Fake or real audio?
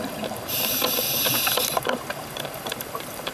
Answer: fake